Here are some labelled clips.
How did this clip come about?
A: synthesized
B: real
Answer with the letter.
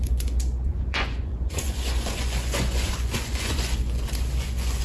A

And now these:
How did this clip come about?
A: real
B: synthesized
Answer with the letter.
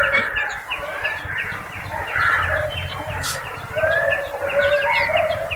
A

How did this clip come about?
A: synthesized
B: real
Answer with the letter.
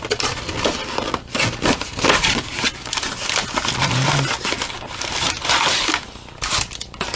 B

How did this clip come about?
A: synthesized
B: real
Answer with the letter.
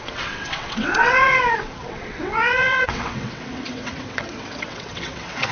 A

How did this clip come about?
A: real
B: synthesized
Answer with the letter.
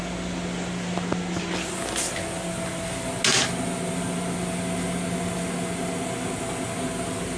A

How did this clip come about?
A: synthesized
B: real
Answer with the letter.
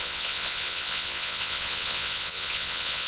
A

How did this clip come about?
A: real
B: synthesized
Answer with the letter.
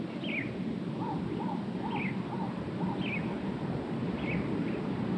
A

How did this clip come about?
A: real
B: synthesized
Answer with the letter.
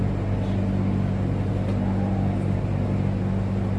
A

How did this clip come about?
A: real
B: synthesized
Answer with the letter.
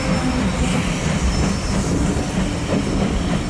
A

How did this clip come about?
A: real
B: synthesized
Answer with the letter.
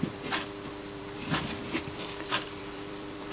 B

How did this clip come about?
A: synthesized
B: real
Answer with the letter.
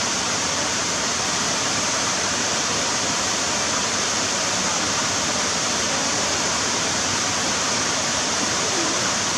A